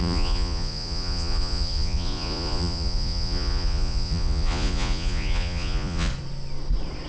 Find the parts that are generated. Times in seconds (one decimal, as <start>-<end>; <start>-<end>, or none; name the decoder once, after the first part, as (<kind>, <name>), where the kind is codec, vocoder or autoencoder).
0.0-6.1 (vocoder, Vocos)